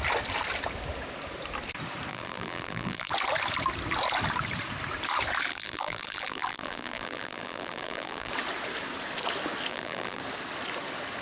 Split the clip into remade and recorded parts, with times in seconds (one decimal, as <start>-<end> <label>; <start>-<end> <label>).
0.0-2.1 recorded; 2.1-3.1 remade; 3.1-5.5 recorded; 5.5-8.3 remade; 8.3-9.7 recorded; 9.7-10.2 remade; 10.2-11.2 recorded

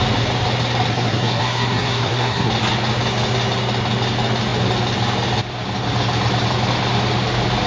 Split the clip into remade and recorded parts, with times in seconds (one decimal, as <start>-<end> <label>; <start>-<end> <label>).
0.0-0.9 recorded; 0.9-2.5 remade; 2.5-7.7 recorded